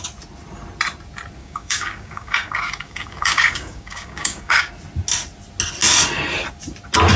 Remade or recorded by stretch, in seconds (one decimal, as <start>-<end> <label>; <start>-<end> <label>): 0.0-1.4 recorded; 1.4-4.7 remade; 4.7-7.2 recorded